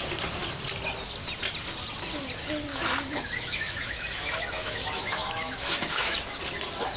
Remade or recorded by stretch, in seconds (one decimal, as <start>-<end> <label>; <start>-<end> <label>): 0.0-2.7 recorded; 2.7-6.3 remade; 6.3-7.0 recorded